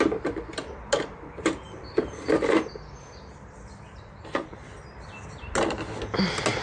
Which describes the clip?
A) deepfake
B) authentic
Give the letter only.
B